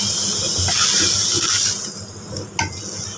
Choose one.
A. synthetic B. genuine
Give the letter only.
B